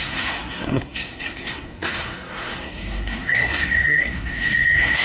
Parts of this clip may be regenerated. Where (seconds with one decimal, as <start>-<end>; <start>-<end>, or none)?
0.0-5.0